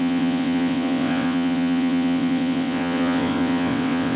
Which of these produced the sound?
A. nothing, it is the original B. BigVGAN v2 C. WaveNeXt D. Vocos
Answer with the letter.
C